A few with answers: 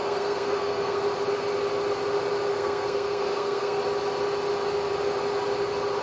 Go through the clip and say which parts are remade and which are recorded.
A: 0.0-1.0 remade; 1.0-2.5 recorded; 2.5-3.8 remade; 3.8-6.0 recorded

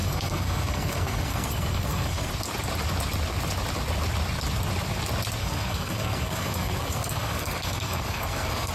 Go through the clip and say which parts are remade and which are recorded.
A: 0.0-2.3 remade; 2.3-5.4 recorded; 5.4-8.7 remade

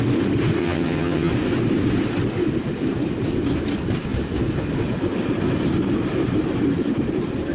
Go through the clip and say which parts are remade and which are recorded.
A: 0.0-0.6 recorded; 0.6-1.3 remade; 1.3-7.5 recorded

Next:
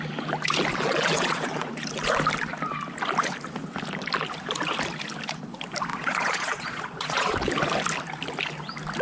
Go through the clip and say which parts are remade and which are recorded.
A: 0.0-0.7 recorded; 0.7-1.7 remade; 1.7-5.9 recorded; 5.9-7.5 remade; 7.5-9.0 recorded

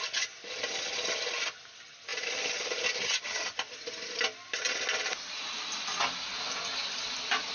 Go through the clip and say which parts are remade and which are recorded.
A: 0.0-7.5 recorded

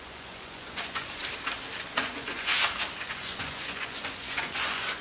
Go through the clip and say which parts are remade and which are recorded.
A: 0.0-1.2 remade; 1.2-1.8 recorded; 1.8-2.5 remade; 2.5-3.0 recorded; 3.0-5.0 remade

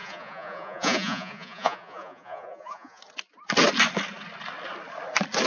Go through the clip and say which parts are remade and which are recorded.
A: 0.0-3.0 remade; 3.0-5.5 recorded